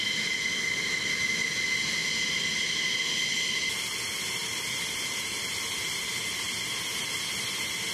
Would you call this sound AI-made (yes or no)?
no